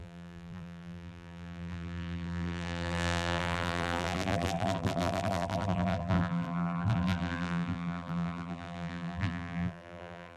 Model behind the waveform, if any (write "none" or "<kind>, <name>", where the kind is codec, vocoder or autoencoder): vocoder, BigVGAN v2